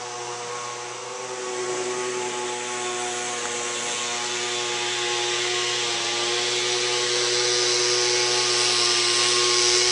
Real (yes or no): yes